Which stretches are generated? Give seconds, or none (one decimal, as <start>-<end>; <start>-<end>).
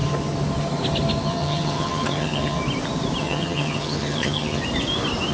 1.3-2.6; 3.2-4.6